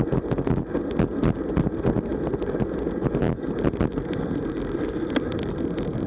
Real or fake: real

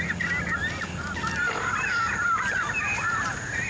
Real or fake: real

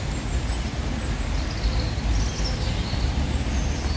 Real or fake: real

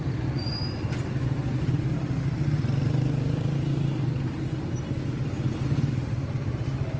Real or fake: real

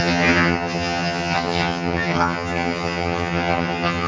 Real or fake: fake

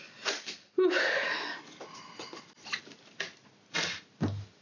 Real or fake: real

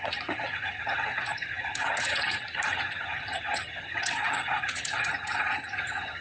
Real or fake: fake